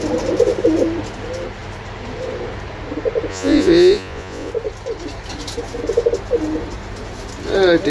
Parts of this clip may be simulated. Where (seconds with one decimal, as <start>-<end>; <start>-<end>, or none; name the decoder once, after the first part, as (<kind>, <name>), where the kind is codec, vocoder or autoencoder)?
3.3-4.5 (vocoder, Vocos)